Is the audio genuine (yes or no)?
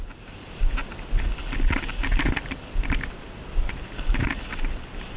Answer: yes